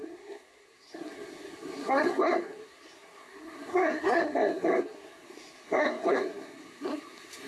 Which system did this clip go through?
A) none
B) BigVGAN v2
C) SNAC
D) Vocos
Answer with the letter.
C